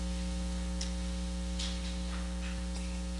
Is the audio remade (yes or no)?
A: no